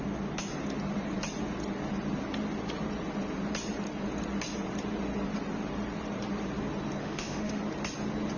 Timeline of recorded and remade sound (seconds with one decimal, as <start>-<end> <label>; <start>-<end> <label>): 0.0-7.0 recorded; 7.0-7.6 remade; 7.6-8.4 recorded